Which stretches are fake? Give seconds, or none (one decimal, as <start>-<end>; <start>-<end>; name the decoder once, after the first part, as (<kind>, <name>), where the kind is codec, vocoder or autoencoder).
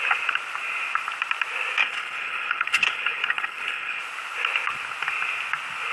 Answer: 1.8-4.0 (codec, HILCodec)